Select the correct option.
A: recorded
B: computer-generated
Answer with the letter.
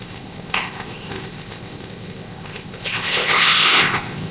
B